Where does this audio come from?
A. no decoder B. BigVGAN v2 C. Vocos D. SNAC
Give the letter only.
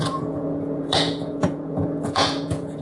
C